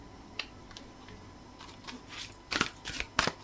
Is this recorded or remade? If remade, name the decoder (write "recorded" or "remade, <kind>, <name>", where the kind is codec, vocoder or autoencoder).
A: recorded